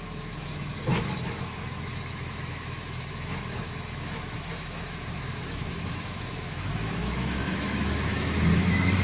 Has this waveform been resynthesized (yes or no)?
yes